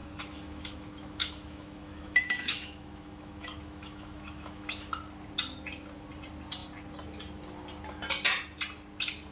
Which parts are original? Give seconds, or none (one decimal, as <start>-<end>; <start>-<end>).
4.9-9.3